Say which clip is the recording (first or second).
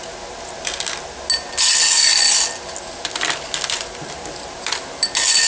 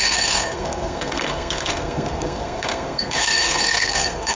first